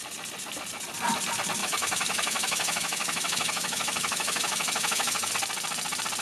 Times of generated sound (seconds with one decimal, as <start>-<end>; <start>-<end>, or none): 1.6-5.3